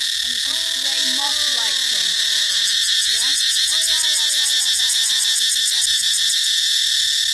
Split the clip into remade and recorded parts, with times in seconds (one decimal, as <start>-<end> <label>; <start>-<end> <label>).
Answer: 0.0-7.3 recorded